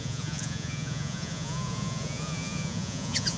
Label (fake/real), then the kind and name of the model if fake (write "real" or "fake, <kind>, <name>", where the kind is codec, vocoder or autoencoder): fake, vocoder, Vocos